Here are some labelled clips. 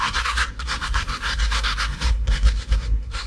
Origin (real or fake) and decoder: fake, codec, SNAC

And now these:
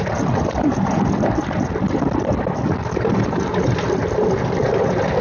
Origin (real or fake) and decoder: real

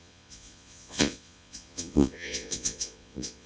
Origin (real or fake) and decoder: fake, vocoder, Vocos